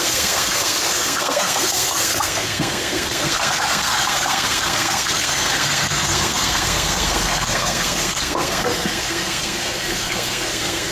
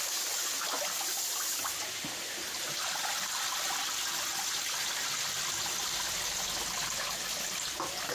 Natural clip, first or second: second